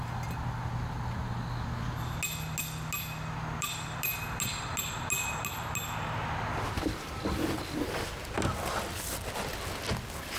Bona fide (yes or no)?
yes